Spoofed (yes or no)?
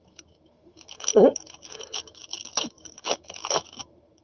yes